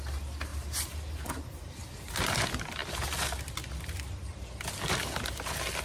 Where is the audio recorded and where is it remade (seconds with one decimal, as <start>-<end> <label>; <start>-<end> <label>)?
0.0-5.8 recorded